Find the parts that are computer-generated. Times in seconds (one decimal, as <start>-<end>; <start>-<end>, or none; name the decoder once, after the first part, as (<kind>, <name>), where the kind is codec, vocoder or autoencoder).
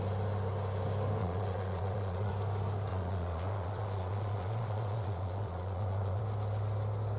1.2-2.3 (vocoder, Vocos); 2.9-6.2